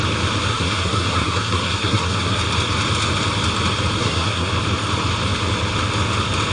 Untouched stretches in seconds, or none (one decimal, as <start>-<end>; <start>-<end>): 0.0-0.5; 2.4-4.0; 4.5-6.5